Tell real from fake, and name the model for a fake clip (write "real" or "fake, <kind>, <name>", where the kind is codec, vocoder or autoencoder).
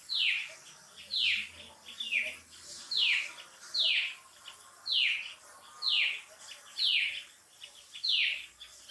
real